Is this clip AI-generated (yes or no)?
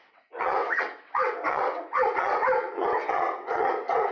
yes